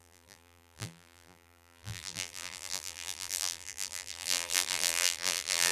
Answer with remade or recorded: remade